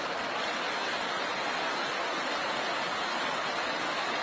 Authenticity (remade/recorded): recorded